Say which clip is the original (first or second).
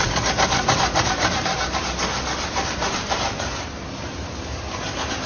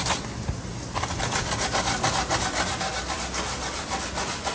second